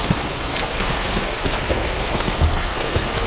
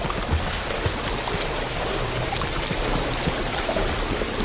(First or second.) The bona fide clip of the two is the second